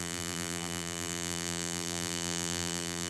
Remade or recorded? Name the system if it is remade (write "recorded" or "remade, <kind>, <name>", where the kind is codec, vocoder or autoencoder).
remade, vocoder, BigVGAN v2